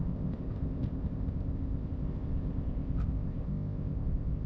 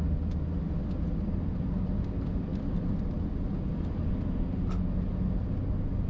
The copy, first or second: first